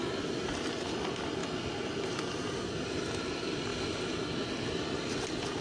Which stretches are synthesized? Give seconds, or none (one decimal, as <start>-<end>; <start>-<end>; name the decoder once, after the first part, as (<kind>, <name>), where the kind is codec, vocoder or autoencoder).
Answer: none